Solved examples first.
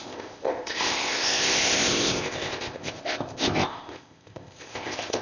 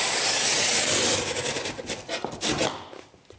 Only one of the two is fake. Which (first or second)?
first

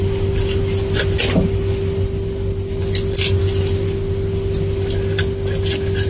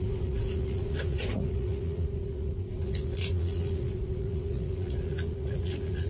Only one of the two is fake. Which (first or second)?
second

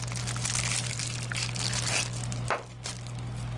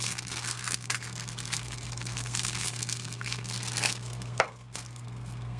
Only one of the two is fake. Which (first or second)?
second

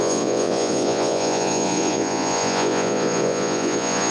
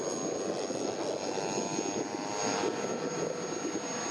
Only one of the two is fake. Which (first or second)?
first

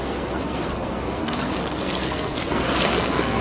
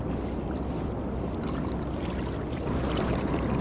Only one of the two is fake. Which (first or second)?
first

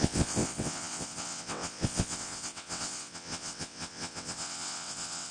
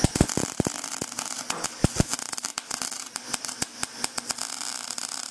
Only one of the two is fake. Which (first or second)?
first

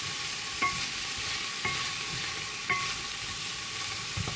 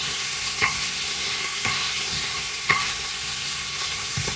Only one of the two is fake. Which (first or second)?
second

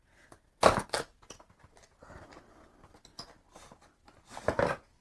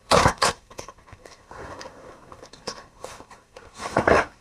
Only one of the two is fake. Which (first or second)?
second